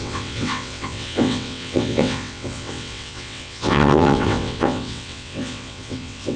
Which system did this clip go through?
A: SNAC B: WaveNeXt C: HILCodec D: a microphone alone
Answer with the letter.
B